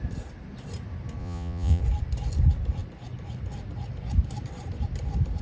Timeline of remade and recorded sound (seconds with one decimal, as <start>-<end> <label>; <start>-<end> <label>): 0.0-1.2 recorded; 1.2-1.8 remade; 1.8-5.4 recorded